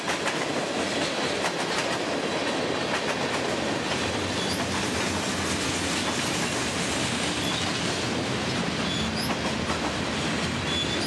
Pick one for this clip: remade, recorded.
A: recorded